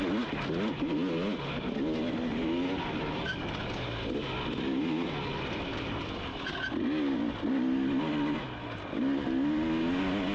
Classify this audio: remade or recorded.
recorded